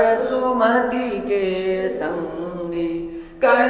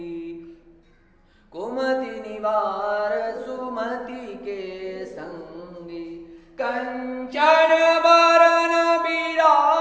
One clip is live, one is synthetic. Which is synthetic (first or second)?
first